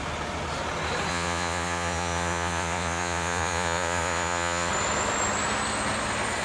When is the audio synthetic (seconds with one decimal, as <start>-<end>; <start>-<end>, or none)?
1.1-4.7